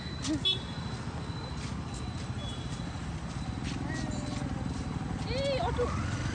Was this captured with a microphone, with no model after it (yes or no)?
yes